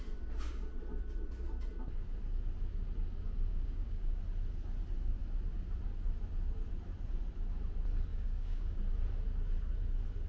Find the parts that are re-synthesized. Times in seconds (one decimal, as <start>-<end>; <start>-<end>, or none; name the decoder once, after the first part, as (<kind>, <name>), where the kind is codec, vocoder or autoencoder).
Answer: 3.5-4.2 (codec, DAC); 8.1-8.8